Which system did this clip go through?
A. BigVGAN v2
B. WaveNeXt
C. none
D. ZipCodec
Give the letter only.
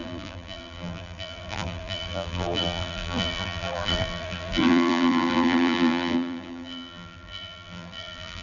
A